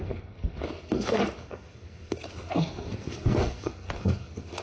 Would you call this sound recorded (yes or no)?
no